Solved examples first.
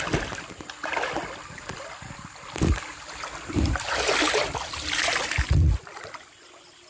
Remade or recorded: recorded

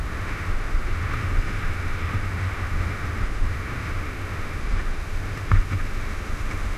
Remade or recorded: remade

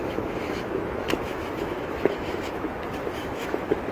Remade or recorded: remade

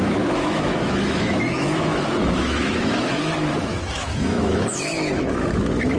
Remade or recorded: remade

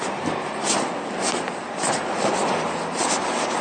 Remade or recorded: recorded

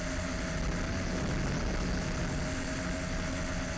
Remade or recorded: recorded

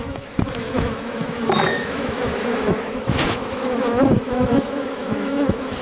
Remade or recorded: remade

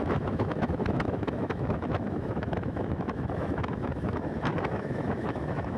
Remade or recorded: remade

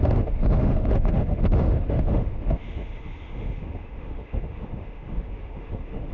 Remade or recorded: remade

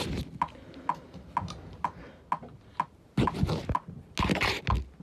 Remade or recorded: recorded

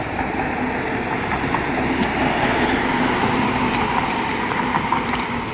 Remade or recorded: recorded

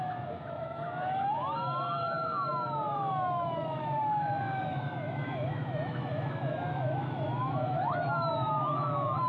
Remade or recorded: remade